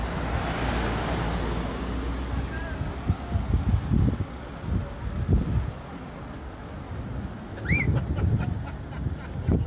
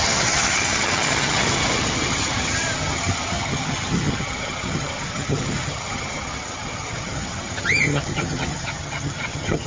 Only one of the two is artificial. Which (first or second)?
second